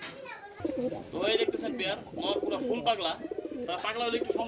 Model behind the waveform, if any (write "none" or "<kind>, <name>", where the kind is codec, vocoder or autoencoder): none